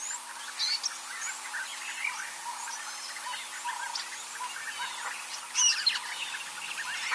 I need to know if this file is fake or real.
real